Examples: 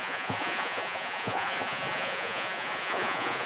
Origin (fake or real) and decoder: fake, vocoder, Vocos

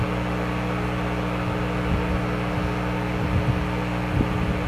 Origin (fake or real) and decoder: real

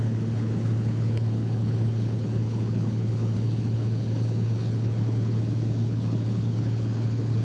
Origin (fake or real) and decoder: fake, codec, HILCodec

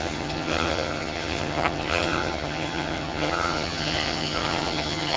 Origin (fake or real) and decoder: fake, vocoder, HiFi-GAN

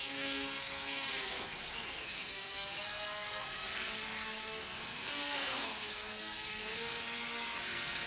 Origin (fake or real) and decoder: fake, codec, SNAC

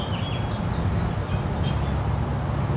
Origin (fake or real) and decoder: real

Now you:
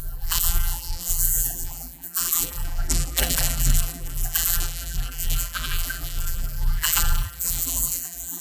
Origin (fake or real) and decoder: fake, vocoder, BigVGAN v2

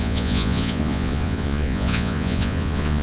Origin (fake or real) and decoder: fake, vocoder, Vocos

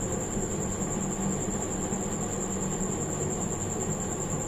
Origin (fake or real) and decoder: real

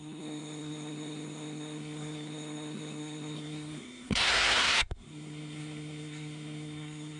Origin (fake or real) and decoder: fake, codec, SNAC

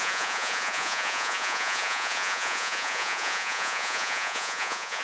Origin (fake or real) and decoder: fake, vocoder, Vocos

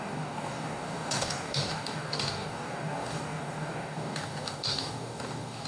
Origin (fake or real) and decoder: fake, codec, DAC